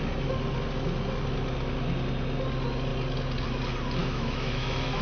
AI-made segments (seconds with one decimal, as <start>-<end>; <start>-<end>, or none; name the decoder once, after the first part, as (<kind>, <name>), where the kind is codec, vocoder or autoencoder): 4.0-5.0 (autoencoder, DAC-VAE)